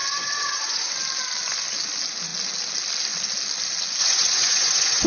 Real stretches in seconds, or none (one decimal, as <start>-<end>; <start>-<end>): 0.9-4.0